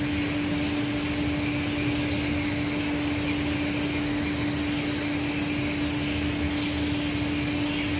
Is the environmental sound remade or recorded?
recorded